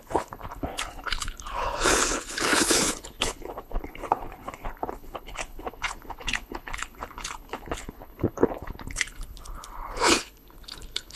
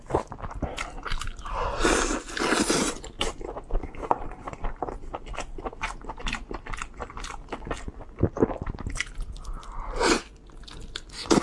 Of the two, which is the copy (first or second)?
first